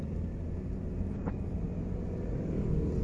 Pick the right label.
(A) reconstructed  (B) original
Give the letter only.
B